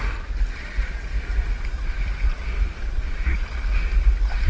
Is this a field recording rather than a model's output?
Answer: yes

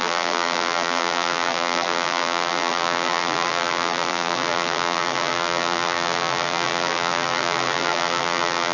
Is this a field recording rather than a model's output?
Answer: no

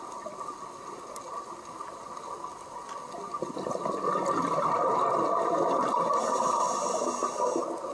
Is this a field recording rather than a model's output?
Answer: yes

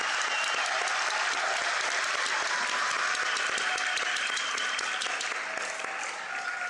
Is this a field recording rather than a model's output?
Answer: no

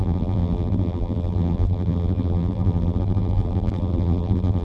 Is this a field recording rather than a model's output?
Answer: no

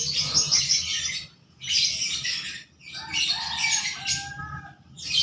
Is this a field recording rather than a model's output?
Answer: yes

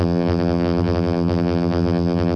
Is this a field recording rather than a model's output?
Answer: no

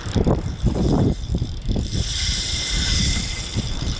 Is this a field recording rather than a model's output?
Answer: no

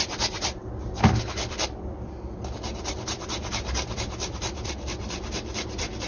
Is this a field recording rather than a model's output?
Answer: no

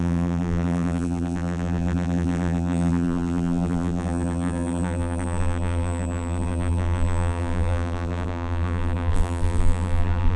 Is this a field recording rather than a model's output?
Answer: no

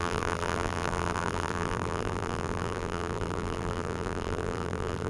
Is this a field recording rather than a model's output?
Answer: no